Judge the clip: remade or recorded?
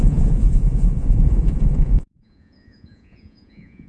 remade